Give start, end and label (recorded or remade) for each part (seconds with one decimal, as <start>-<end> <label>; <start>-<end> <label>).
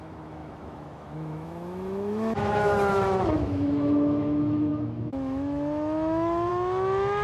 0.0-7.2 remade